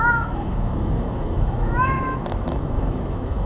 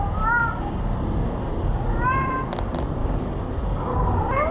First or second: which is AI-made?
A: first